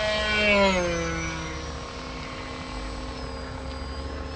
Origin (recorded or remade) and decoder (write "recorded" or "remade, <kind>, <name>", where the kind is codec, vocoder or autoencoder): recorded